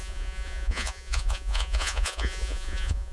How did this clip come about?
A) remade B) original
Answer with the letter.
A